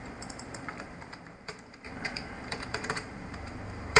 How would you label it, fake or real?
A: fake